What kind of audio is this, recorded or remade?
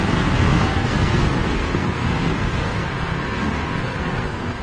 remade